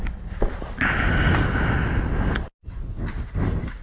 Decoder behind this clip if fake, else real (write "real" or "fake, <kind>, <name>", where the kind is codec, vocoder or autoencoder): real